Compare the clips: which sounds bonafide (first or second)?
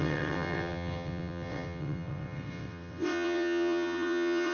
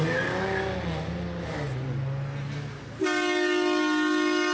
second